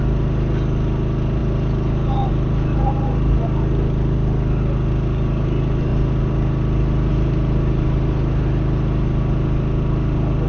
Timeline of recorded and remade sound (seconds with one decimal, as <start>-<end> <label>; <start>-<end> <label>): 0.0-10.5 recorded

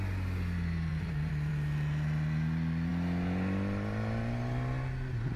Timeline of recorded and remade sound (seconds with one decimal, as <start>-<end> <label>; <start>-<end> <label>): 0.0-5.4 recorded

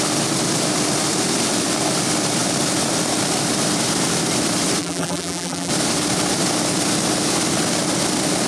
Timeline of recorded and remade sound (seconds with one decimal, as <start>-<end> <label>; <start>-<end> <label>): 0.0-4.8 recorded; 4.8-5.7 remade; 5.7-8.5 recorded

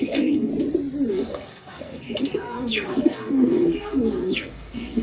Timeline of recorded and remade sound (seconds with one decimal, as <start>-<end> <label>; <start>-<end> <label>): 0.0-0.5 remade; 0.5-1.1 recorded; 1.1-5.0 remade

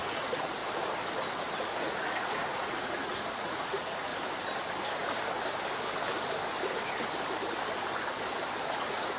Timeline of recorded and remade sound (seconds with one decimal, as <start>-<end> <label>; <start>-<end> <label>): 0.0-0.6 remade; 0.6-1.8 recorded; 1.8-4.1 remade; 4.1-8.7 recorded; 8.7-9.2 remade

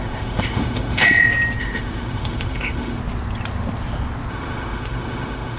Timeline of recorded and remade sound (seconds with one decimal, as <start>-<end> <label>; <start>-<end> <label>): 0.0-1.0 remade; 1.0-1.6 recorded; 1.6-3.0 remade; 3.0-4.3 recorded; 4.3-5.6 remade